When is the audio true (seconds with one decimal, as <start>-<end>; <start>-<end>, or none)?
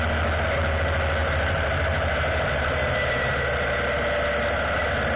0.0-1.2; 3.3-5.2